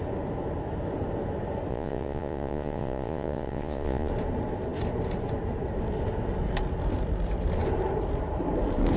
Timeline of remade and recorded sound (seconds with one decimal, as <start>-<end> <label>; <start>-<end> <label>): 0.0-1.7 recorded; 1.7-4.1 remade; 4.1-9.0 recorded